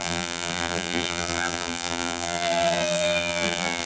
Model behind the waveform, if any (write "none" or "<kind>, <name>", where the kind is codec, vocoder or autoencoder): vocoder, BigVGAN v2